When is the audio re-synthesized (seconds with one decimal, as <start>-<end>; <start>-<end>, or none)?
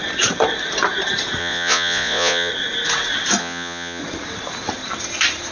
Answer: 1.4-2.5; 3.4-4.0